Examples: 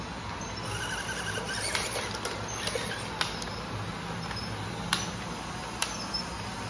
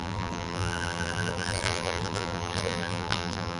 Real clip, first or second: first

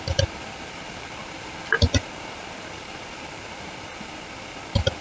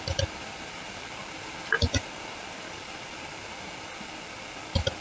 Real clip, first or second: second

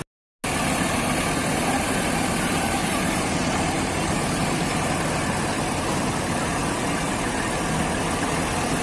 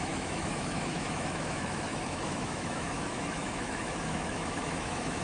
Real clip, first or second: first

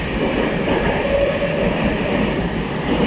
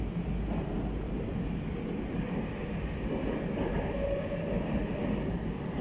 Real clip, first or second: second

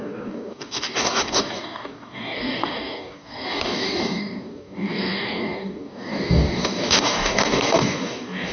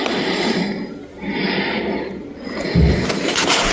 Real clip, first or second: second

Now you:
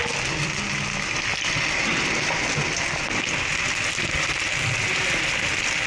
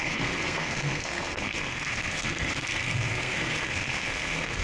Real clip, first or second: first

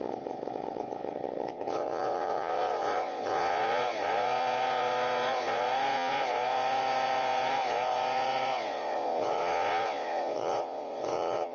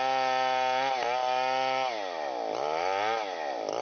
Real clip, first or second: second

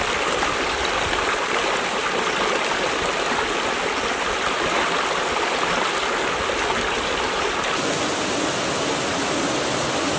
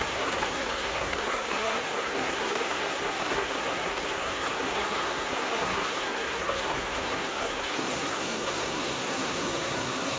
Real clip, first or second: first